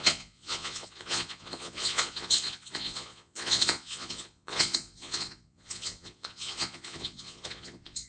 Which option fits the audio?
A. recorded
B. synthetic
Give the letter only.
B